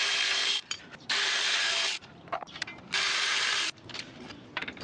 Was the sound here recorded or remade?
remade